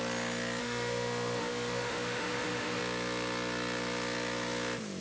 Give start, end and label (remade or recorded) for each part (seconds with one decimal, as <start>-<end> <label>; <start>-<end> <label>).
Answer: 0.0-0.6 recorded; 0.6-2.8 remade; 2.8-5.0 recorded